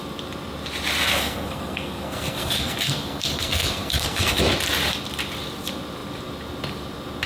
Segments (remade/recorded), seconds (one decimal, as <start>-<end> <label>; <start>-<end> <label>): 0.0-1.0 recorded; 1.0-4.4 remade; 4.4-7.3 recorded